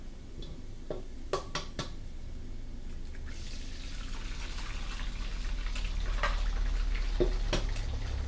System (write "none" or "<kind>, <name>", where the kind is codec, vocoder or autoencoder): none